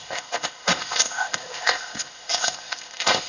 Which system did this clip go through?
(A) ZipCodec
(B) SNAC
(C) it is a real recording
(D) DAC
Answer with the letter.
A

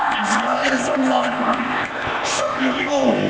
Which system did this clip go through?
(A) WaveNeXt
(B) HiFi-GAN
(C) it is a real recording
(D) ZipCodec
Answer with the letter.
D